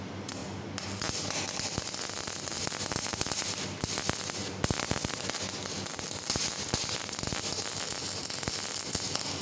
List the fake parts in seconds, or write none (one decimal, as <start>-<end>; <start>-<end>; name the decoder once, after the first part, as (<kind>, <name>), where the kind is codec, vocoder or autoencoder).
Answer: none